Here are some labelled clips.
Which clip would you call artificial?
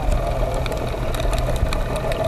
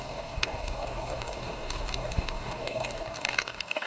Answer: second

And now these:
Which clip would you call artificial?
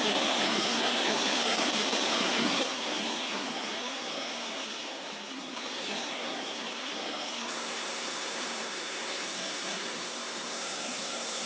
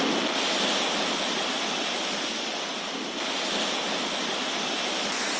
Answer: first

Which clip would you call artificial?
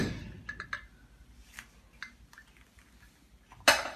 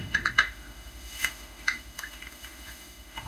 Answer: second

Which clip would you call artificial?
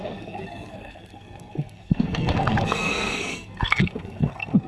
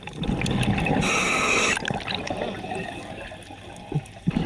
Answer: first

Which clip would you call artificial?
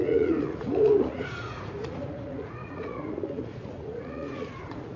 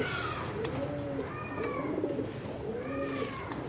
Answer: first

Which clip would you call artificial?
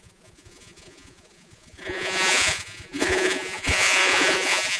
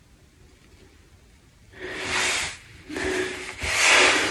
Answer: first